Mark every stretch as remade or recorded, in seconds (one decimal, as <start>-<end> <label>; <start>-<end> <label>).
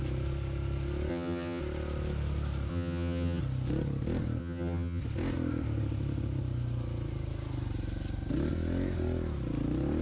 0.0-1.1 recorded; 1.1-1.6 remade; 1.6-2.7 recorded; 2.7-3.4 remade; 3.4-4.4 recorded; 4.4-5.0 remade; 5.0-10.0 recorded